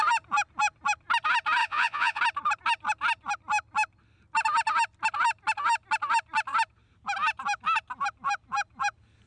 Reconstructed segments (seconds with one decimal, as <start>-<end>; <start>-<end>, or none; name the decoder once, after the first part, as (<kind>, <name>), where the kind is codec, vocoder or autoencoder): 1.6-2.2 (vocoder, Vocos)